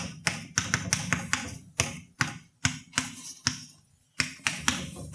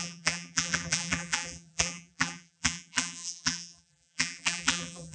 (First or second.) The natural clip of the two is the first